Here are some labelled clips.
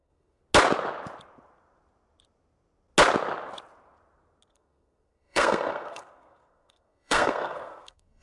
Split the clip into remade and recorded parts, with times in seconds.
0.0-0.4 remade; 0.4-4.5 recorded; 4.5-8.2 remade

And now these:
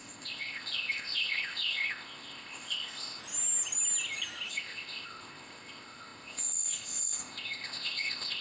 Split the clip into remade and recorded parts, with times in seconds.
0.0-3.2 remade; 3.2-4.5 recorded; 4.5-8.4 remade

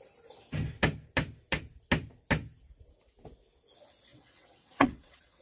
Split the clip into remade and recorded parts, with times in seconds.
0.0-4.1 recorded; 4.1-5.4 remade

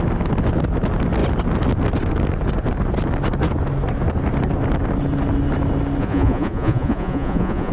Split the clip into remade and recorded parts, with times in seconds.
0.0-6.0 recorded; 6.0-7.7 remade

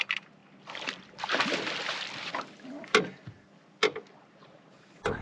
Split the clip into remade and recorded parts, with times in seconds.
0.0-5.2 recorded

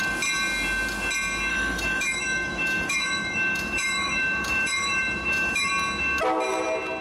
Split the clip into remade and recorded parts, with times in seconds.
0.0-1.5 recorded; 1.5-5.7 remade; 5.7-7.0 recorded

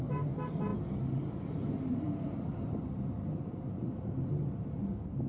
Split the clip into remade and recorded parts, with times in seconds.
0.0-0.7 recorded; 0.7-3.9 remade; 3.9-5.3 recorded